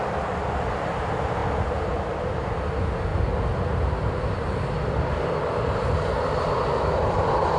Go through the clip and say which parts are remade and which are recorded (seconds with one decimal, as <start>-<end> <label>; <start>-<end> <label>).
0.0-7.6 recorded